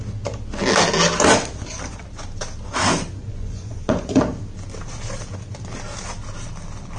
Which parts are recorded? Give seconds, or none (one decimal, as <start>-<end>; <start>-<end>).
0.0-3.2; 4.2-7.0